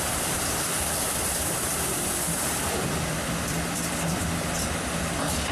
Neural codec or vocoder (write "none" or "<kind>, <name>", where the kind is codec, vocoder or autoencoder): vocoder, BigVGAN v2